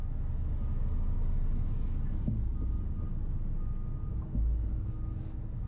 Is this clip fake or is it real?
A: real